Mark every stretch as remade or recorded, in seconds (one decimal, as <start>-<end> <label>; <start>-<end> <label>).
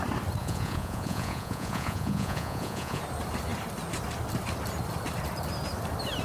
0.0-0.4 recorded; 0.4-3.0 remade; 3.0-6.2 recorded